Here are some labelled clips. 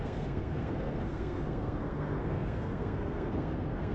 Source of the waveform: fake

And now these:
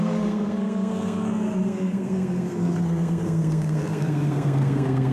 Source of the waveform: fake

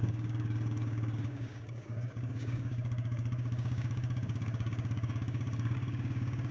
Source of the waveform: fake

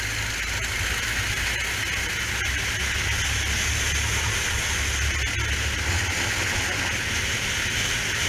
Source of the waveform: real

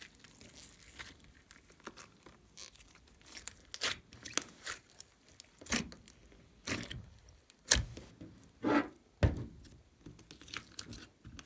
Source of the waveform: real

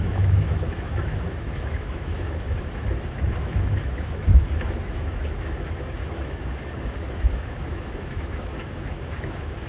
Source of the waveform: fake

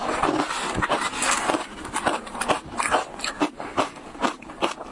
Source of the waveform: real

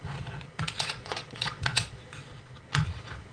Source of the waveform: fake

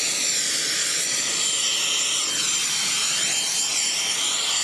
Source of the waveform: real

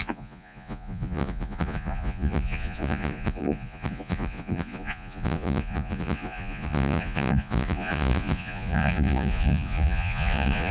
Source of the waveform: fake